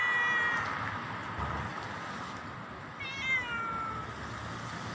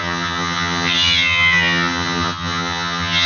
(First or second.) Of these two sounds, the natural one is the first